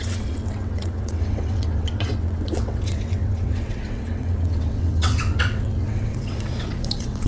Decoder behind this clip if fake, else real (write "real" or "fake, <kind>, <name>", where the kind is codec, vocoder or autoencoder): fake, vocoder, WaveNeXt